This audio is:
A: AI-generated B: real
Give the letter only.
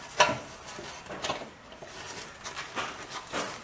A